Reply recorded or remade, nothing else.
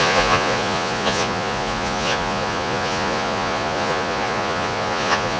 remade